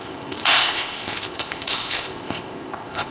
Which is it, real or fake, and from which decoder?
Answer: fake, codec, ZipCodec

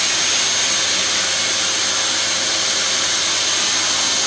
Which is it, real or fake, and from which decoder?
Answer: real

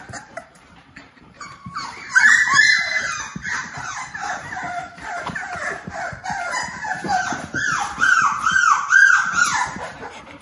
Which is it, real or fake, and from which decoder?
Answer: fake, vocoder, BigVGAN v2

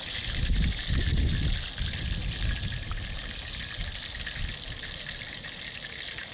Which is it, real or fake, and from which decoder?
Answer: real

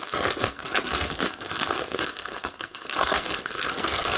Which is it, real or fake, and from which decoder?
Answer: fake, codec, SNAC